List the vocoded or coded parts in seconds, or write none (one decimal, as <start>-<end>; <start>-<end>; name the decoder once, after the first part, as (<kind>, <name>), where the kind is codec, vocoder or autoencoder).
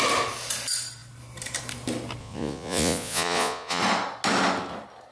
2.2-3.8 (vocoder, Vocos)